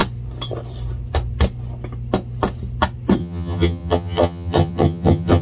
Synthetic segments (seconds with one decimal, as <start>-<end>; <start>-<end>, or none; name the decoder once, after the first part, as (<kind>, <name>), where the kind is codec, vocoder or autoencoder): 3.2-5.4 (vocoder, HiFi-GAN)